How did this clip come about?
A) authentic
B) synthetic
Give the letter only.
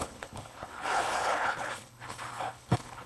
B